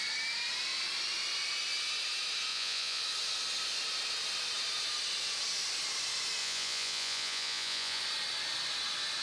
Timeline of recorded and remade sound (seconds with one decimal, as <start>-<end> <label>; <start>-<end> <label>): 0.0-2.5 recorded; 2.5-3.0 remade; 3.0-6.4 recorded; 6.4-8.0 remade; 8.0-9.2 recorded